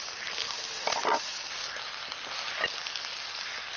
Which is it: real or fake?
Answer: real